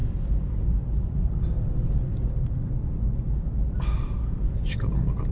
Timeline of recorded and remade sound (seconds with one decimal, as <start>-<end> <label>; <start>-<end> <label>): 0.0-5.3 recorded